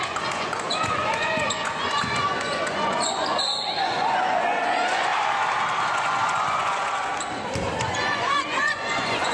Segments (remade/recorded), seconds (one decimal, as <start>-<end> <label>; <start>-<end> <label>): 0.0-5.1 remade; 5.1-5.8 recorded; 5.8-7.1 remade; 7.1-7.8 recorded; 7.8-9.3 remade